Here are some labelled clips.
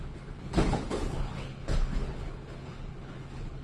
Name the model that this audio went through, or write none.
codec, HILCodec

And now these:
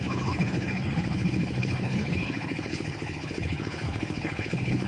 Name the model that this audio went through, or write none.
codec, HILCodec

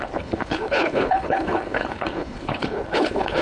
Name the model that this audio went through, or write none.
codec, HILCodec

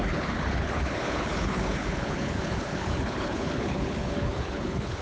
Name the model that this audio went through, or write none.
codec, HILCodec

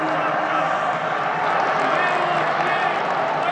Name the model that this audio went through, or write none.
none